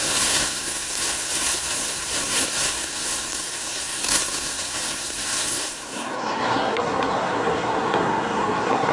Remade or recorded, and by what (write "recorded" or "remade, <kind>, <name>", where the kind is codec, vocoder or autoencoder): remade, codec, SNAC